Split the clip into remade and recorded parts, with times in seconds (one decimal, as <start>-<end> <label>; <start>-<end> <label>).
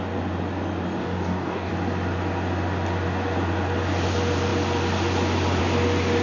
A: 0.0-1.0 recorded; 1.0-1.7 remade; 1.7-6.2 recorded